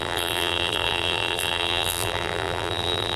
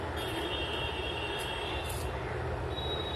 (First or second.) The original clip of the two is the second